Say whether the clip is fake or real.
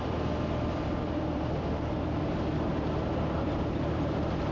fake